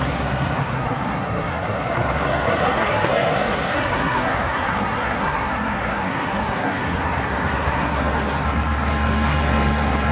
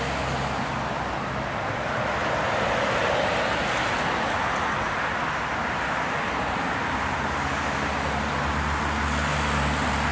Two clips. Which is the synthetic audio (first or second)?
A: first